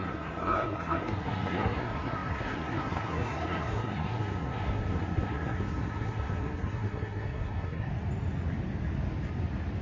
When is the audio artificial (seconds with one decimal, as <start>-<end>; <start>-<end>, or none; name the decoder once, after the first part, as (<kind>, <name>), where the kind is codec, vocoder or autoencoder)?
0.0-7.9 (codec, SNAC)